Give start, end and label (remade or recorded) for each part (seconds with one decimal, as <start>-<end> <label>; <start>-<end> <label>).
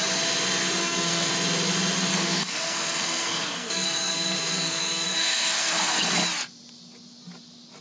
0.0-0.8 recorded; 0.8-1.3 remade; 1.3-2.1 recorded; 2.1-6.1 remade; 6.1-7.8 recorded